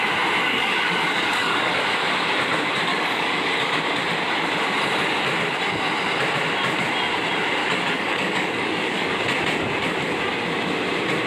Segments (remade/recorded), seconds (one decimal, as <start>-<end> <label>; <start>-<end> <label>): 0.0-0.4 recorded; 0.4-1.8 remade; 1.8-2.9 recorded; 2.9-3.8 remade; 3.8-7.6 recorded; 7.6-9.2 remade; 9.2-11.3 recorded